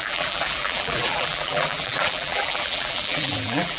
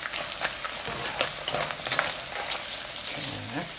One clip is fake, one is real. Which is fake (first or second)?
first